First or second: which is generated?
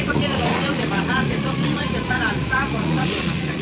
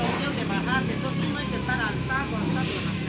first